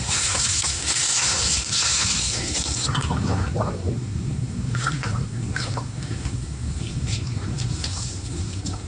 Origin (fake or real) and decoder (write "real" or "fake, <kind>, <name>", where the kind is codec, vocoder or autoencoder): fake, codec, SNAC